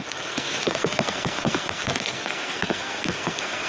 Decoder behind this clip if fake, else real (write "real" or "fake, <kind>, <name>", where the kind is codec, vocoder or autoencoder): fake, codec, SNAC